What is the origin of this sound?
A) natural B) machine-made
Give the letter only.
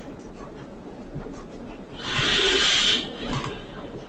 A